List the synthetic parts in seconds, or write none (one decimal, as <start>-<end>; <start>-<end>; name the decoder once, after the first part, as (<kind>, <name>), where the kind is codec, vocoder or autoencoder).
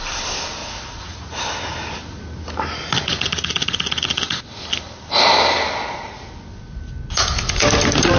0.6-1.4 (vocoder, Vocos)